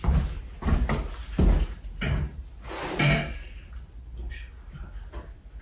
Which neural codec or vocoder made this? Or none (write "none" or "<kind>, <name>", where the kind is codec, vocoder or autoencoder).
none